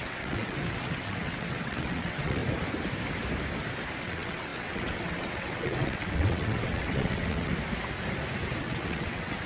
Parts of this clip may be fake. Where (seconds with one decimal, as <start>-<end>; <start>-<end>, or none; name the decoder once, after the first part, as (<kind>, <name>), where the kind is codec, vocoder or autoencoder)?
0.0-2.4 (vocoder, WaveNeXt); 4.0-7.5; 8.6-9.5